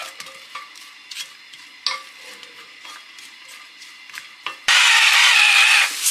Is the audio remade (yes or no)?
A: no